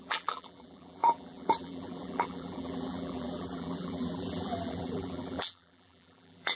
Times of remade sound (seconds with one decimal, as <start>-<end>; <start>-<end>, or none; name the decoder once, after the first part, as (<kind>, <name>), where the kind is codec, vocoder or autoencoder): 0.0-6.5 (vocoder, BigVGAN v2)